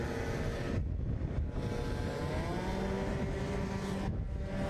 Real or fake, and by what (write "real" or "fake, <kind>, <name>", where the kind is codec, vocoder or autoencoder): real